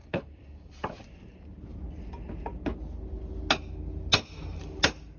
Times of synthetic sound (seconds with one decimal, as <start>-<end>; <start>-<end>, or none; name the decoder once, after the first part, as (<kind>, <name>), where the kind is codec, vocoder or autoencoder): 0.0-0.7 (codec, DAC)